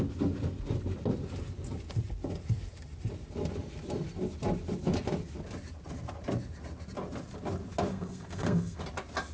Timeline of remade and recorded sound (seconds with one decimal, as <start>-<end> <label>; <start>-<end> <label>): 0.0-7.9 recorded; 7.9-8.8 remade; 8.8-9.3 recorded